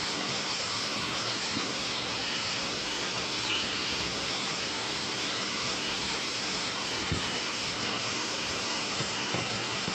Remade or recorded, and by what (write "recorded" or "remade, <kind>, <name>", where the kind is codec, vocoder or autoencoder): remade, codec, SNAC